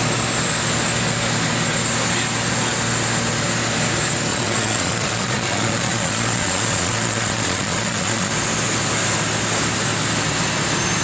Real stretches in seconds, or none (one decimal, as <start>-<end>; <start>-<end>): 0.0-4.3; 8.3-11.0